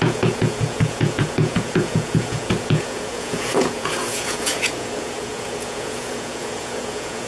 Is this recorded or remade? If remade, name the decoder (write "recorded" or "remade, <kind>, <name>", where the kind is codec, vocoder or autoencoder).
remade, vocoder, Vocos